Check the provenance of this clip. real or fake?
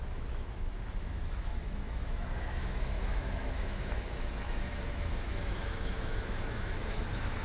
fake